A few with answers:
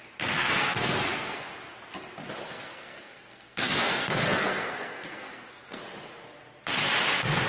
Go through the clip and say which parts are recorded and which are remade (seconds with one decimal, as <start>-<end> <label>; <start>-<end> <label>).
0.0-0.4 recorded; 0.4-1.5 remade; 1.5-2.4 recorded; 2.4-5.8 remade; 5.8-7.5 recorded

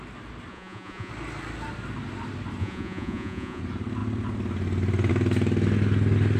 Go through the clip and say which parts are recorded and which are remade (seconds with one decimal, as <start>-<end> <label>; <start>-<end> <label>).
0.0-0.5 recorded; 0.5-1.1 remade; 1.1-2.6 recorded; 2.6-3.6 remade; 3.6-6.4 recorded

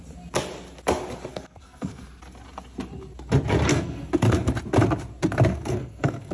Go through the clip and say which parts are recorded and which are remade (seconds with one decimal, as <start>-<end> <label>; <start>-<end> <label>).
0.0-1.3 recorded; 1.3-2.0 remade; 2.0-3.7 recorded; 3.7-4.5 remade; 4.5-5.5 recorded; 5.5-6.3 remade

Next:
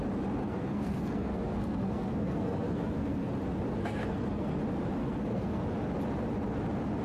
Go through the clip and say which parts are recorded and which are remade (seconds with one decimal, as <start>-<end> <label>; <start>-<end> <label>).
0.0-0.4 recorded; 0.4-3.3 remade; 3.3-3.8 recorded; 3.8-4.6 remade; 4.6-5.0 recorded; 5.0-5.6 remade; 5.6-7.0 recorded